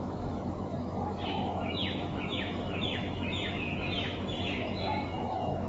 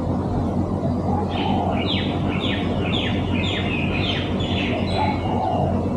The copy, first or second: first